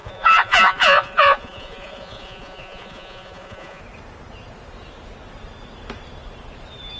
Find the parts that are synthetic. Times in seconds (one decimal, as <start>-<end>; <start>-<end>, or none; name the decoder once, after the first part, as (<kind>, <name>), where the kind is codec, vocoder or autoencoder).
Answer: 0.0-3.8 (vocoder, Vocos)